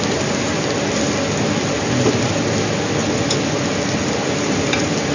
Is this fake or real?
real